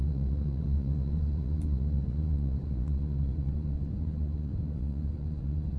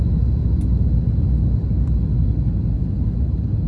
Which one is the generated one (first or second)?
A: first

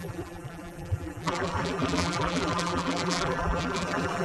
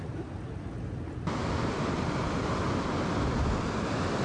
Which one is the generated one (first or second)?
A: first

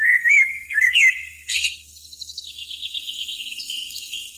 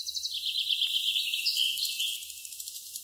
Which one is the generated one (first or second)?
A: first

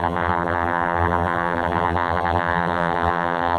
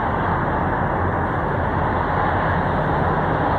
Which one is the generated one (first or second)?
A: first